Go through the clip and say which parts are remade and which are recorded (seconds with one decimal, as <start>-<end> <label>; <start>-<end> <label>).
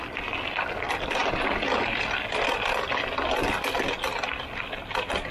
0.0-5.3 recorded